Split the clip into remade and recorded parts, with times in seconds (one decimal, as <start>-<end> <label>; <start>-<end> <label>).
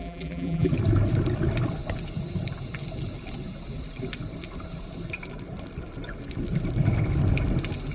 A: 0.0-0.7 remade; 0.7-7.9 recorded